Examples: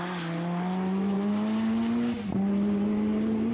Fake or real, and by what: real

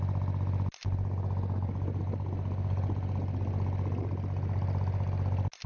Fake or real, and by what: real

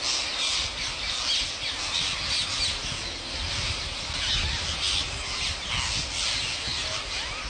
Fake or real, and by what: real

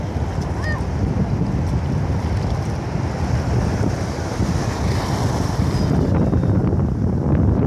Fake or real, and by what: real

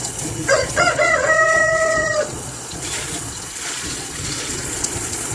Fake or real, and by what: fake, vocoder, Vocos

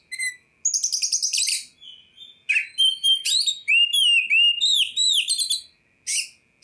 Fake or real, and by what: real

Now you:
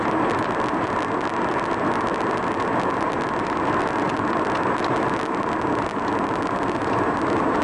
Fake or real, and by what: real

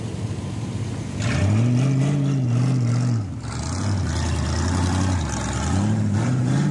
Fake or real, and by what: real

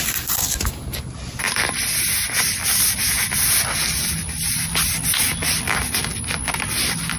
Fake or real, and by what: real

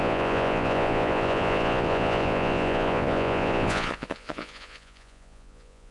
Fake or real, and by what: fake, vocoder, Vocos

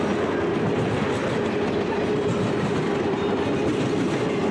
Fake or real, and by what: real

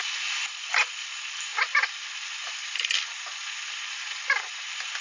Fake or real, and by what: real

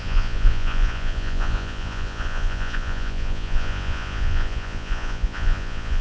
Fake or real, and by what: fake, vocoder, Vocos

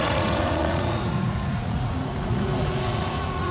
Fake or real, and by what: fake, vocoder, Vocos